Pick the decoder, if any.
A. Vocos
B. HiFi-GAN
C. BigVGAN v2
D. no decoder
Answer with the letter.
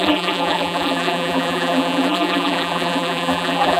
C